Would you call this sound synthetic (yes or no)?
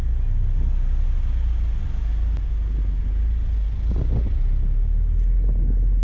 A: no